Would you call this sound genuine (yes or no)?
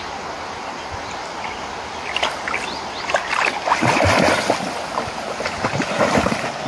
yes